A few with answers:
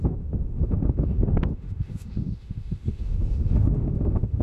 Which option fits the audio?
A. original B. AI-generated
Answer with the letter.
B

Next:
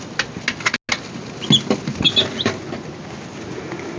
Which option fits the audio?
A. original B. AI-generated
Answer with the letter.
A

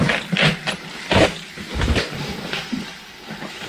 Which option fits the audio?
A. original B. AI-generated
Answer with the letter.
A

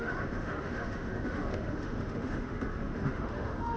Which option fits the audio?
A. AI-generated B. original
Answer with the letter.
A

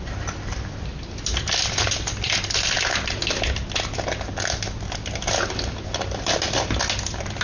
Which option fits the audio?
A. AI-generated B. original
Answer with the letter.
B